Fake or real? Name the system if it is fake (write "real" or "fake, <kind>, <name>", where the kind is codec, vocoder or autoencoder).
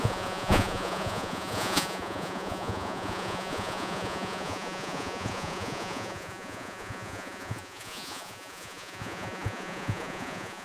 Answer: fake, vocoder, Vocos